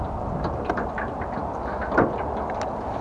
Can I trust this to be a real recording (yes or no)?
yes